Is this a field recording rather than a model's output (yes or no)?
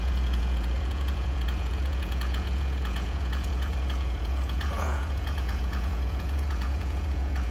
no